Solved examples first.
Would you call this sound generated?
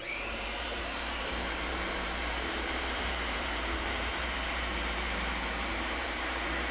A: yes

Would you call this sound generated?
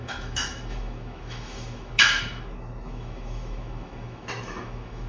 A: yes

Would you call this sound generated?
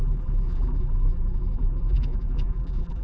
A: yes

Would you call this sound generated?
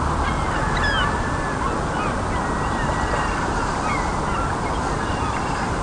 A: no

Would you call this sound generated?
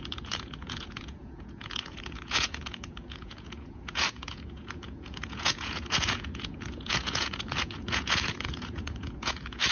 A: yes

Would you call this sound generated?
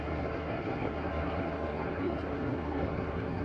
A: yes